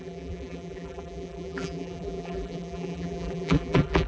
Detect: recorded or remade remade